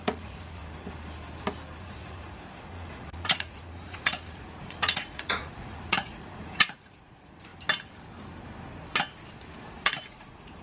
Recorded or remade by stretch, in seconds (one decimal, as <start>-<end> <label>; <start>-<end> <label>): 0.0-0.6 remade; 0.6-1.8 recorded; 1.8-7.5 remade; 7.5-9.7 recorded; 9.7-10.6 remade